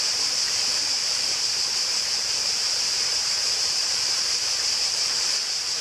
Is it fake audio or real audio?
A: fake